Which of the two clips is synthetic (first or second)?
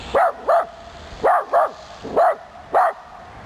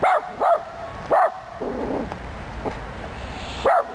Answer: second